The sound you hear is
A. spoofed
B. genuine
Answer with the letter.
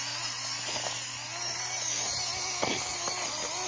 B